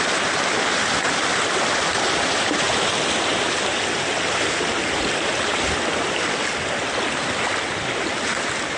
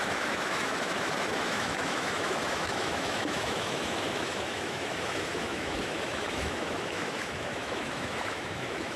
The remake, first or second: second